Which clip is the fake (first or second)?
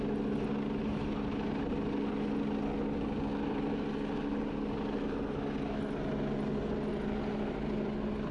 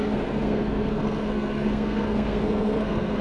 second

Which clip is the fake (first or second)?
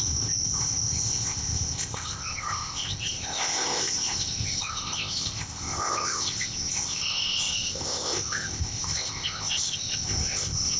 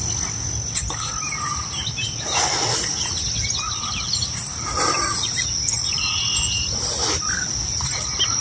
first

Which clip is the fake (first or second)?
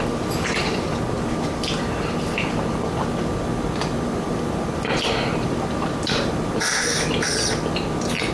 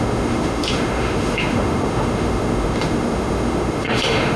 second